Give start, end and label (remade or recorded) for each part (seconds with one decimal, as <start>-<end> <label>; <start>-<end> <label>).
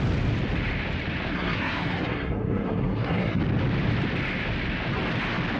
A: 0.0-1.3 recorded; 1.3-3.4 remade; 3.4-5.6 recorded